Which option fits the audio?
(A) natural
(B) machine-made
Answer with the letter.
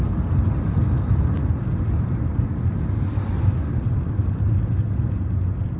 A